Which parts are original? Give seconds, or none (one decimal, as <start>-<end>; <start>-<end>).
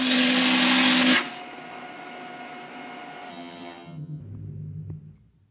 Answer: 0.0-3.3; 4.2-5.5